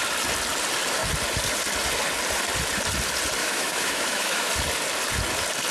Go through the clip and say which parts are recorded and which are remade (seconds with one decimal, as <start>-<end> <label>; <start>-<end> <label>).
0.0-3.4 recorded; 3.4-4.5 remade; 4.5-5.7 recorded